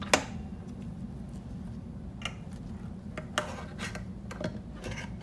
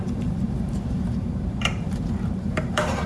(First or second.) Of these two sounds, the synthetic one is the second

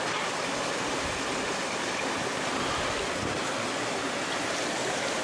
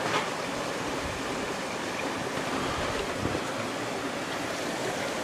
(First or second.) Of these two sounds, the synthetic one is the second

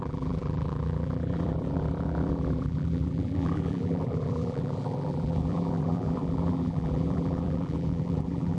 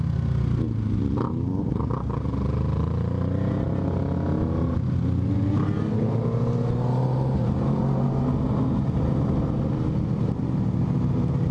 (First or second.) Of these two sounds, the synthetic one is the first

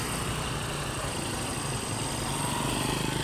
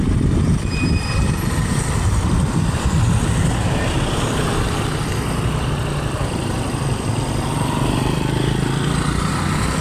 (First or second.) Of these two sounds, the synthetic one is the second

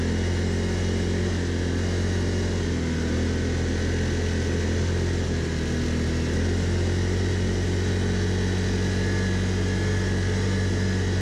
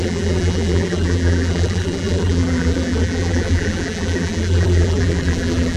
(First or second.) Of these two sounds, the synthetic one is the second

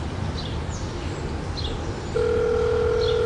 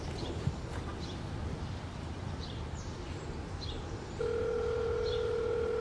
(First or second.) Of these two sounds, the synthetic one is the second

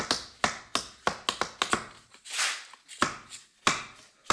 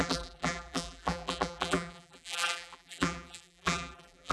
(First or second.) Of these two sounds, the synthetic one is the second